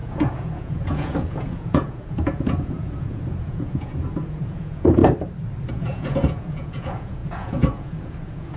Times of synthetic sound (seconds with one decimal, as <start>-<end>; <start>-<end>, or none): 0.0-5.0; 5.7-8.6